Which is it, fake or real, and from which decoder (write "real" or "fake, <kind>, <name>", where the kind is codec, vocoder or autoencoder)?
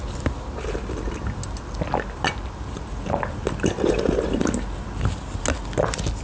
real